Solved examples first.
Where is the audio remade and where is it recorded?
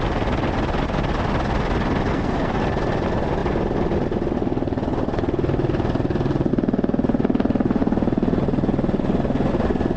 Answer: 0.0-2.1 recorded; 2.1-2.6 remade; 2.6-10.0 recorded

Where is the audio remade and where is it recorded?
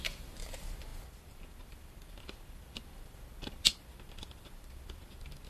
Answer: 0.0-5.5 remade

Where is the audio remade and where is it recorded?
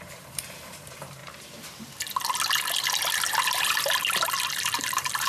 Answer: 0.0-1.2 remade; 1.2-4.4 recorded; 4.4-5.3 remade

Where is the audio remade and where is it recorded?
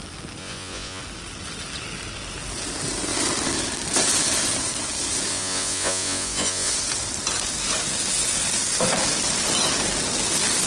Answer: 0.0-0.4 recorded; 0.4-1.0 remade; 1.0-5.3 recorded; 5.3-6.7 remade; 6.7-10.7 recorded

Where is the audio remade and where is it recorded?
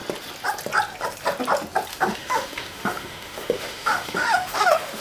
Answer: 0.0-1.9 recorded; 1.9-5.0 remade